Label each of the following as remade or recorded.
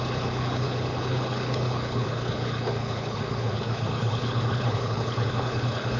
remade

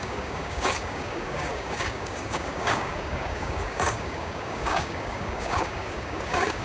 remade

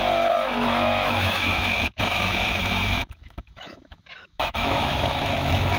remade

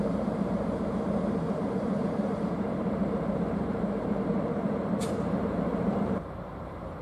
remade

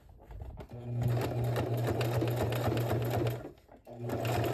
recorded